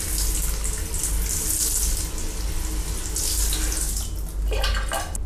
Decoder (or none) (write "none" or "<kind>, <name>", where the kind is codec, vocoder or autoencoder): none